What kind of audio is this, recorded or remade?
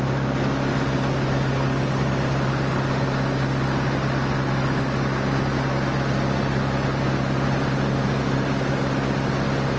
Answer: recorded